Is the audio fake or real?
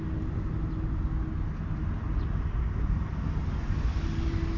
real